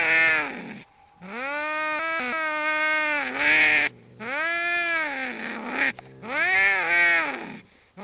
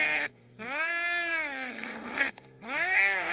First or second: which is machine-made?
second